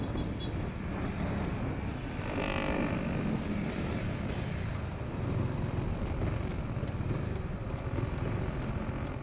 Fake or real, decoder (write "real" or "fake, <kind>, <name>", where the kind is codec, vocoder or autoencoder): real